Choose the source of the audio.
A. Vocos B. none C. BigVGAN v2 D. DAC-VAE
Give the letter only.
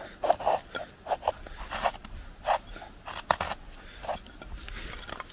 B